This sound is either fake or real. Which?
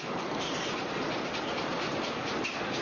real